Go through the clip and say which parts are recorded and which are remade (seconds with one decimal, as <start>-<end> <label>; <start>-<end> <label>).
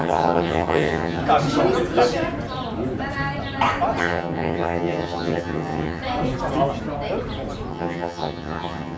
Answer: 0.0-1.2 remade; 1.2-4.0 recorded; 4.0-6.0 remade; 6.0-7.7 recorded; 7.7-9.0 remade